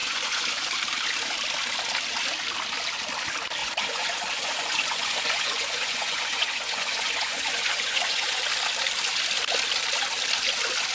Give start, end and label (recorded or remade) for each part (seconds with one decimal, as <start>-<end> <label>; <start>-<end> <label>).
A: 0.0-0.7 remade; 0.7-3.6 recorded; 3.6-8.4 remade; 8.4-10.9 recorded